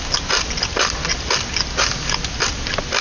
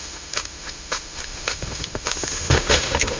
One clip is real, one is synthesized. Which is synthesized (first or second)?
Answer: second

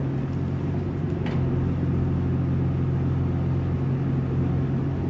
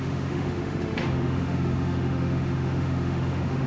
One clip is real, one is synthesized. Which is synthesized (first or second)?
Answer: second